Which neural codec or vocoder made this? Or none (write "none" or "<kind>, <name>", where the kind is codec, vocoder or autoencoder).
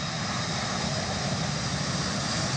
none